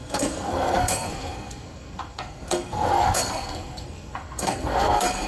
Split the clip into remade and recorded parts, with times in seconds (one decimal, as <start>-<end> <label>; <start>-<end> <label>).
0.0-5.3 remade